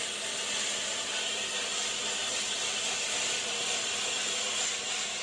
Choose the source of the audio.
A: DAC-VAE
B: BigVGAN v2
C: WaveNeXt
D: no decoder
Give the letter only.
D